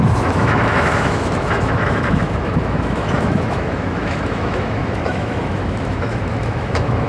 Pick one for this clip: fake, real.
fake